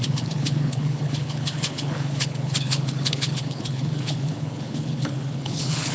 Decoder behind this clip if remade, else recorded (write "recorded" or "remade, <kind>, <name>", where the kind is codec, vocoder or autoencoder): remade, codec, HILCodec